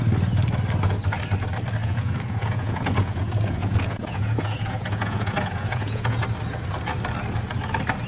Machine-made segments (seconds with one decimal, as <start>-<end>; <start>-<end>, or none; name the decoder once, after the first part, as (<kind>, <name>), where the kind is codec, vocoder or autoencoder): 1.8-6.2 (vocoder, Vocos)